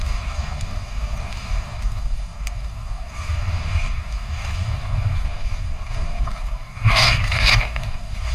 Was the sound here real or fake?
fake